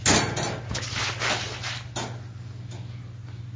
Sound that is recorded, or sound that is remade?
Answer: recorded